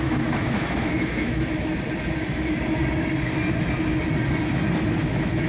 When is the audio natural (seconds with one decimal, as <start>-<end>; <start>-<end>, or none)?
1.7-5.0